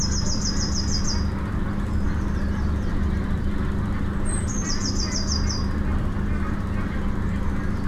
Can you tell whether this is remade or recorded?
recorded